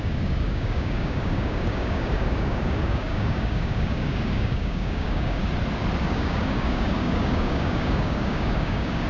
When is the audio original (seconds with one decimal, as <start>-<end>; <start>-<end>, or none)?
5.4-6.0